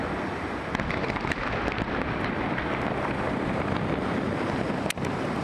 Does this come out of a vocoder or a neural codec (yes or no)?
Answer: yes